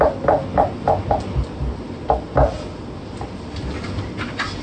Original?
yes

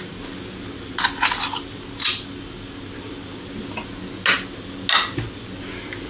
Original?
yes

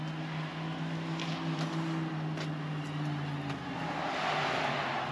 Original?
yes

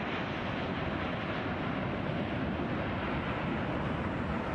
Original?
yes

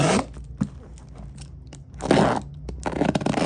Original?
yes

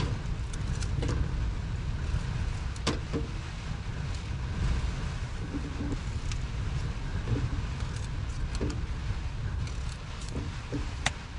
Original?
yes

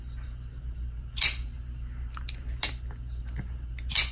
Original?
yes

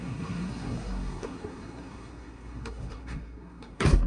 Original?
no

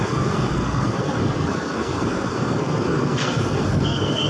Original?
no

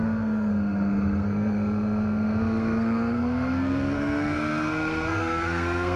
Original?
no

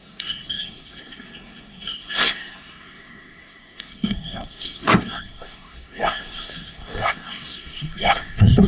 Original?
no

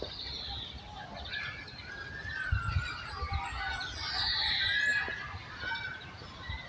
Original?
yes